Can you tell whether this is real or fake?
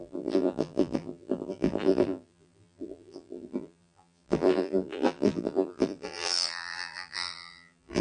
fake